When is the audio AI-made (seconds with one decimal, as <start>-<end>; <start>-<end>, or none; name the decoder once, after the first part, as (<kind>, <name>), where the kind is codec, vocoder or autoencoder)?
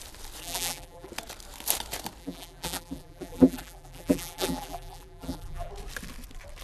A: 0.4-1.1 (vocoder, BigVGAN v2); 2.2-5.7